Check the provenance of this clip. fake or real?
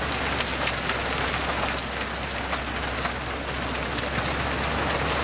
real